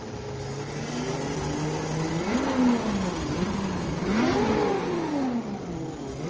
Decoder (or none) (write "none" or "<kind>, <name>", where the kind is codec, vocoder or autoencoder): none